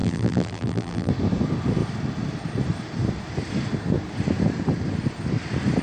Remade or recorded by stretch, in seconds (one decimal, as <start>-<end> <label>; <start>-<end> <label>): 0.0-1.1 remade; 1.1-5.8 recorded